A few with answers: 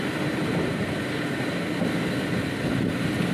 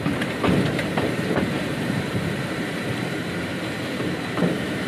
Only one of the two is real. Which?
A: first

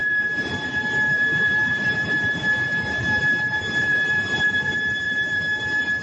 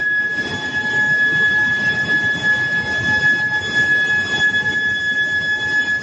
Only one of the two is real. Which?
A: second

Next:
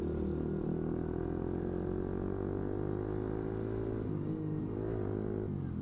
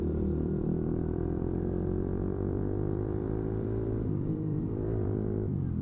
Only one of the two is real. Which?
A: first